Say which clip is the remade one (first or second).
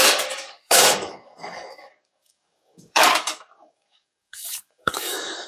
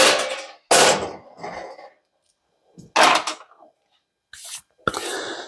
first